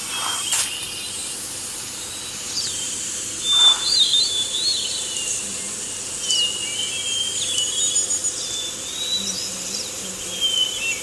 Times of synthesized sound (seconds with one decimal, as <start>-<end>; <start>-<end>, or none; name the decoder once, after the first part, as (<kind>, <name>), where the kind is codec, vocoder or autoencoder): 1.2-5.6 (vocoder, BigVGAN v2)